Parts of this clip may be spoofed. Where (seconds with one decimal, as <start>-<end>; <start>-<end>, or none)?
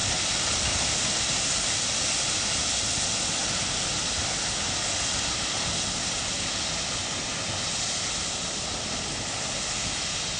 none